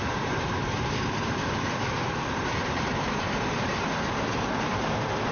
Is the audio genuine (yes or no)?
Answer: no